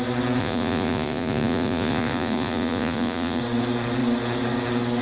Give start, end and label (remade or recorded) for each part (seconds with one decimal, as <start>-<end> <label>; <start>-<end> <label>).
0.0-0.4 recorded; 0.4-3.4 remade; 3.4-5.0 recorded